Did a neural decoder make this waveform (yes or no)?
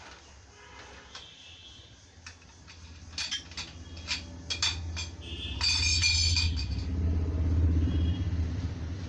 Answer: no